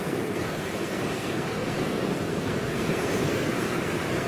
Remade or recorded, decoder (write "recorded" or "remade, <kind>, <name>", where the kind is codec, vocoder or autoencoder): remade, codec, SNAC